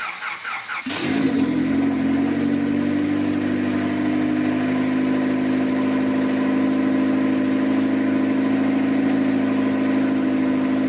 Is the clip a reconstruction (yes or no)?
no